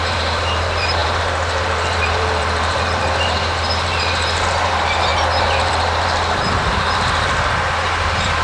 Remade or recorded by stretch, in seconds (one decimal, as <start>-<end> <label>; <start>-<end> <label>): 0.0-8.4 remade

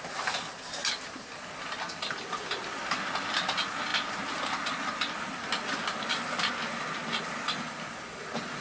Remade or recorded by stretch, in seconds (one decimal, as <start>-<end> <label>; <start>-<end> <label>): 0.0-8.6 recorded

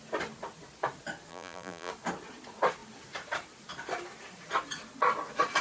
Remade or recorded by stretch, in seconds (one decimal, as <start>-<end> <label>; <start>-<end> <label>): 0.0-1.3 recorded; 1.3-1.9 remade; 1.9-5.6 recorded

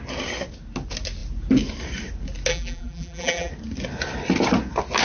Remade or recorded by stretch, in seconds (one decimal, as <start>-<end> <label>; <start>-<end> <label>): 0.0-2.5 recorded; 2.5-3.5 remade; 3.5-5.0 recorded

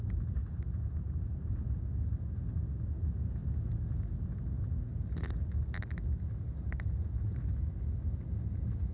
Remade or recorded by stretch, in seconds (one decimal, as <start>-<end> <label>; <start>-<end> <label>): 0.0-0.4 recorded; 0.4-1.7 remade; 1.7-8.9 recorded

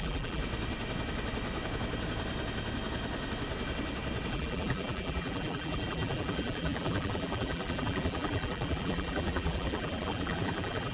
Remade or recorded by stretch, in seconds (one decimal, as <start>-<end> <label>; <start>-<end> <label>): 0.0-0.4 remade; 0.4-4.3 recorded; 4.3-10.9 remade

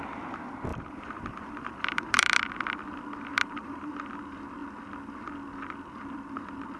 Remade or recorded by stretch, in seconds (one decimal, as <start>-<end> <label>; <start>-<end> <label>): 0.0-0.7 recorded; 0.7-2.4 remade; 2.4-3.3 recorded; 3.3-3.9 remade; 3.9-6.8 recorded